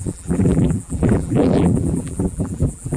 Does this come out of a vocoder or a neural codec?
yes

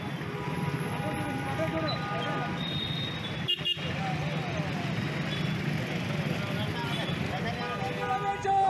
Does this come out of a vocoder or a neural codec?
no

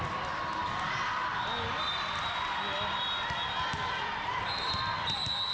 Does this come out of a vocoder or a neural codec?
no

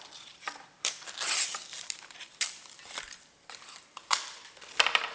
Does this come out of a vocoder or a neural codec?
yes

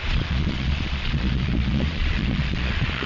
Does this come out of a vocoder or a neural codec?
yes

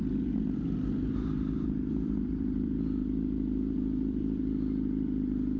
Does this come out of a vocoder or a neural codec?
yes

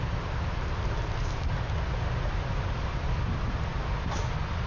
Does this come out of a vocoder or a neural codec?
no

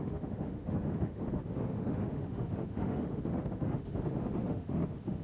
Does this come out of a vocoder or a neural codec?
yes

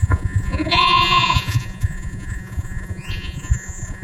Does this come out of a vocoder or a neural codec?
yes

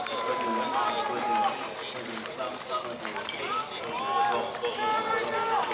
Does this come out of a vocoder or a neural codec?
no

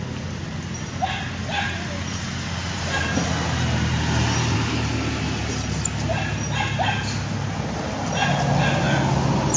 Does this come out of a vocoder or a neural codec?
no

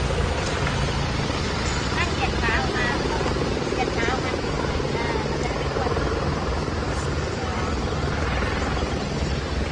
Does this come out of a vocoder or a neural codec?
no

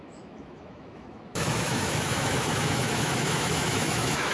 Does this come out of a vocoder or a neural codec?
yes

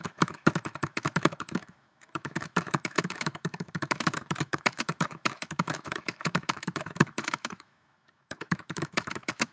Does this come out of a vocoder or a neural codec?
yes